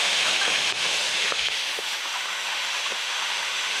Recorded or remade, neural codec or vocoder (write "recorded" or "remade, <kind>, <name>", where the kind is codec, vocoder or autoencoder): remade, autoencoder, DAC-VAE